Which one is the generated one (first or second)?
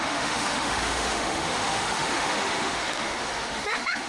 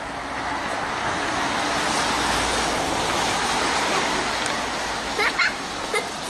first